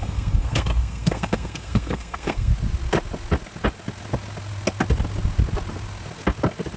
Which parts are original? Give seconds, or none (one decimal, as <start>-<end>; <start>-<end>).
2.5-6.8